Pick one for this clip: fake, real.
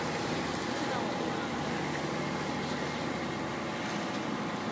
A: real